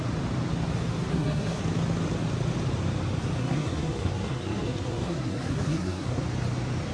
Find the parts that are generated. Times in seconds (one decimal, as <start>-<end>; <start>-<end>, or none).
1.1-1.6; 3.4-6.2